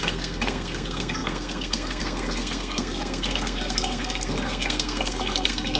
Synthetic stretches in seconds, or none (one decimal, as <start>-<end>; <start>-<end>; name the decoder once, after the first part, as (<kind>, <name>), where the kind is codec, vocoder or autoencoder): 0.0-5.8 (codec, SNAC)